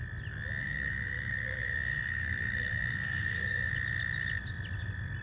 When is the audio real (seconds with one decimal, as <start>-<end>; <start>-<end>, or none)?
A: 0.0-0.6; 3.7-5.2